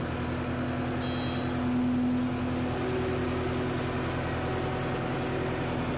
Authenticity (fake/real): real